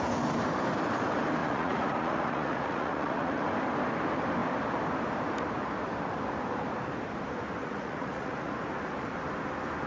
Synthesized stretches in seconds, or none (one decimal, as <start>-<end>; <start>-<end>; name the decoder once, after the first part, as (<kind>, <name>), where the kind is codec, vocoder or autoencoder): 1.4-3.4 (vocoder, Vocos); 7.6-8.5